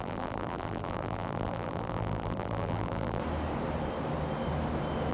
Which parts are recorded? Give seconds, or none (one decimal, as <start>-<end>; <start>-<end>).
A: 3.2-5.1